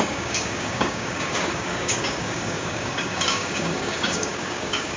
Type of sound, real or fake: fake